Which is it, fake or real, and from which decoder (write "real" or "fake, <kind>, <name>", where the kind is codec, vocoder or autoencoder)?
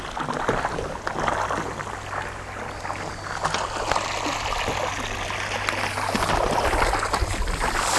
real